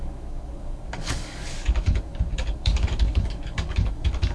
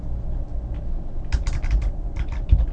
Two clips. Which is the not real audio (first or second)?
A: first